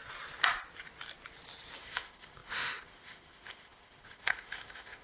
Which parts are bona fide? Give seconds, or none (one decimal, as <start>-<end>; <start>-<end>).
0.0-1.8